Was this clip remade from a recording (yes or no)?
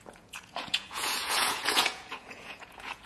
yes